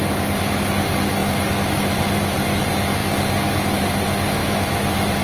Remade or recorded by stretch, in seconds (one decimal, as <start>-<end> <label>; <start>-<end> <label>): 0.0-4.4 recorded; 4.4-5.2 remade